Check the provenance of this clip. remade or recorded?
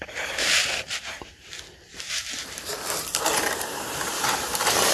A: remade